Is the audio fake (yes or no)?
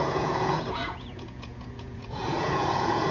yes